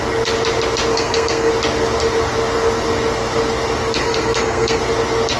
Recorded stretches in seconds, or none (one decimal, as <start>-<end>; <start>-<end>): 0.0-0.9; 1.5-4.0; 4.8-5.4